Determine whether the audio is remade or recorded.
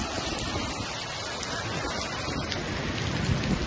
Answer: recorded